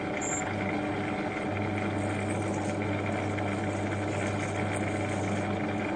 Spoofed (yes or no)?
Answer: no